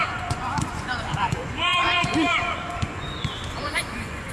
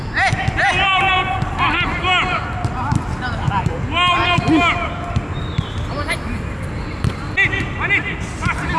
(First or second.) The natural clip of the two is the second